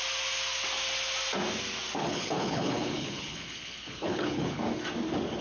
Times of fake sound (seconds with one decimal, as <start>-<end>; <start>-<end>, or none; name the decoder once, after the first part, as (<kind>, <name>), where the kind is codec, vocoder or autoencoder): 2.0-4.6 (codec, HILCodec)